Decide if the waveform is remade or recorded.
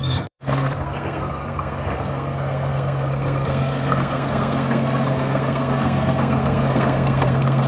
remade